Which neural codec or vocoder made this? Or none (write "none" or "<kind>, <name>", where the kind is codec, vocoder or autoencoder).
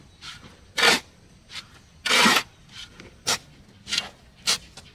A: none